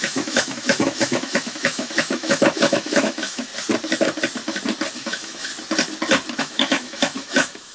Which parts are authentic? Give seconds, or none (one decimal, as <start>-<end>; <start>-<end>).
3.5-4.9; 5.5-6.4